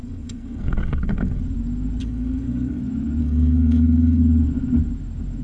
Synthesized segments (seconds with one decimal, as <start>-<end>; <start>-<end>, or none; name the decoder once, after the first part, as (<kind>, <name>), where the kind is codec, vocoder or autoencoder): 0.0-1.4 (codec, SNAC); 2.0-2.8; 3.2-4.2